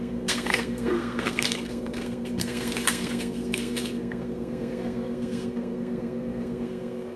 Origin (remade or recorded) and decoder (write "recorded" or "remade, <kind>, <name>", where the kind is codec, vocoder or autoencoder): remade, codec, SNAC